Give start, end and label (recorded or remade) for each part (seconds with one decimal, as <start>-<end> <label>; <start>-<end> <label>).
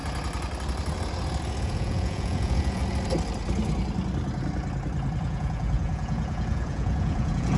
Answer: 0.0-1.6 recorded; 1.6-2.8 remade; 2.8-5.2 recorded; 5.2-7.6 remade